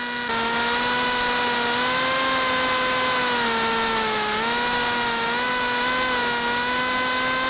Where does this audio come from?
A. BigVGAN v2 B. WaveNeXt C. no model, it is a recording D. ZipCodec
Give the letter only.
C